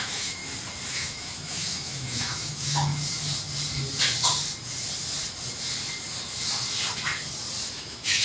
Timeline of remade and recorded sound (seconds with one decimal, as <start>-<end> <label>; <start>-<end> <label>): 0.0-0.4 remade; 0.4-0.9 recorded; 0.9-2.9 remade; 2.9-7.7 recorded; 7.7-8.2 remade